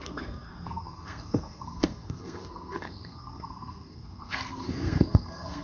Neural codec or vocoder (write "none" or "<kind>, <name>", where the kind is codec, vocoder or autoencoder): codec, SNAC